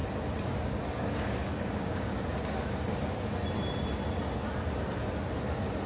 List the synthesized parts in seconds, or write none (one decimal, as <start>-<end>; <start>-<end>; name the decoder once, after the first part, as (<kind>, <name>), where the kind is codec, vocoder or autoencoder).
1.0-2.1 (codec, DAC)